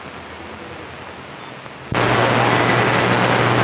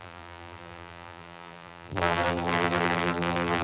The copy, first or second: second